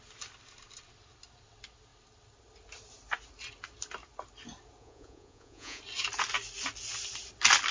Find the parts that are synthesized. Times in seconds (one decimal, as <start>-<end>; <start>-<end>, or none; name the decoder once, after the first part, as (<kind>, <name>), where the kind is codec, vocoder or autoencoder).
4.8-5.8 (vocoder, Vocos)